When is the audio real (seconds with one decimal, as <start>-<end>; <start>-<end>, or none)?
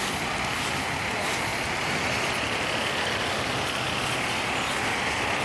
0.0-5.4